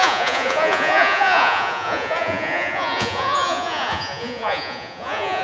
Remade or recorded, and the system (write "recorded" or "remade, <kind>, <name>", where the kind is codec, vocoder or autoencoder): remade, vocoder, Vocos